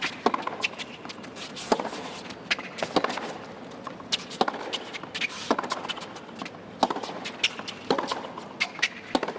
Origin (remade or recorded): recorded